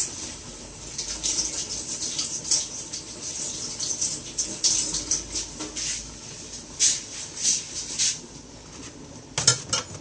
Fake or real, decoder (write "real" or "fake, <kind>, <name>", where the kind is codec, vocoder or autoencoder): real